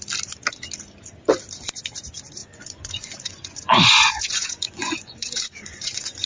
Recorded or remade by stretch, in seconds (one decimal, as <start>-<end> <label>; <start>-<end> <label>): 0.0-2.4 recorded; 2.4-6.3 remade